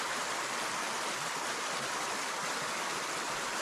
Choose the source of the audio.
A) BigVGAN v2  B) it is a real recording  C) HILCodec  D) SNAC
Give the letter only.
B